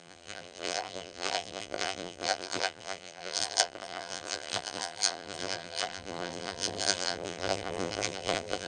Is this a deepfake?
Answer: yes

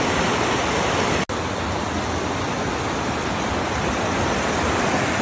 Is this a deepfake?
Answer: no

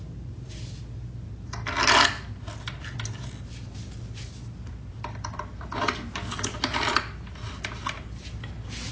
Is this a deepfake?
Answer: no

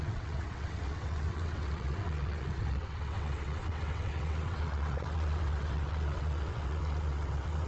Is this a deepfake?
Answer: yes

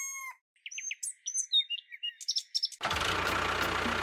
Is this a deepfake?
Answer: no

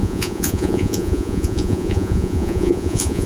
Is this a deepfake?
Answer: yes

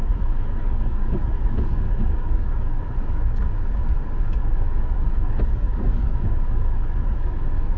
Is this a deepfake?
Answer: yes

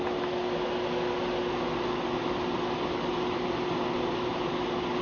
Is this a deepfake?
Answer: no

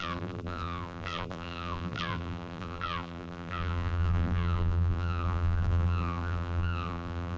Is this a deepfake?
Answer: yes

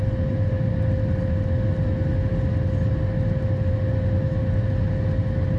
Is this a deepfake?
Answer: no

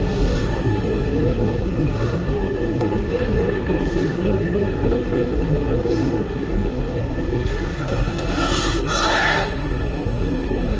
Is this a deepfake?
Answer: yes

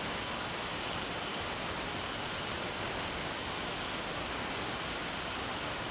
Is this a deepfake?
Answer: no